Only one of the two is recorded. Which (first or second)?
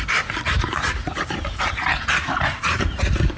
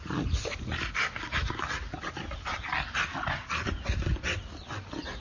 second